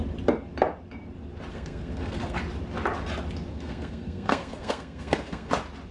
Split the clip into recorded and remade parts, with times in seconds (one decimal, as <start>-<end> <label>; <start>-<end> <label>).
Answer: 0.0-1.5 recorded; 1.5-2.4 remade; 2.4-3.5 recorded; 3.5-5.5 remade; 5.5-5.9 recorded